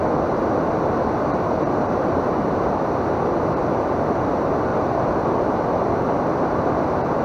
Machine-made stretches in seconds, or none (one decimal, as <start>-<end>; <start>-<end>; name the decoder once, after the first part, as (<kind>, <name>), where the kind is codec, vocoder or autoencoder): 1.3-2.4 (vocoder, BigVGAN v2); 4.7-6.0